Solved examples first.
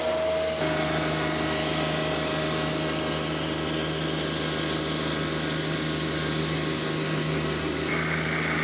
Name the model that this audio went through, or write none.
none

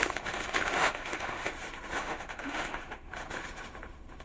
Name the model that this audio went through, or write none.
autoencoder, DAC-VAE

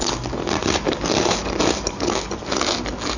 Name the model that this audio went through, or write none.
none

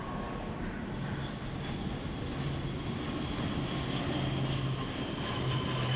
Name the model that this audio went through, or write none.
none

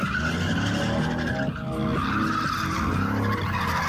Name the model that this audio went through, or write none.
none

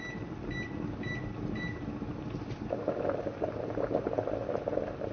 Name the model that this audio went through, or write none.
none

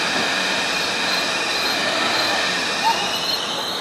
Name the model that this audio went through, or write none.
none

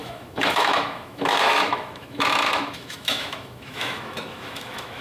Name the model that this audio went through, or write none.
autoencoder, DAC-VAE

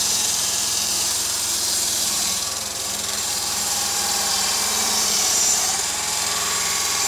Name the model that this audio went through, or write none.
vocoder, BigVGAN v2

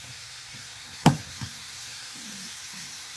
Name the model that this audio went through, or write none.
codec, SNAC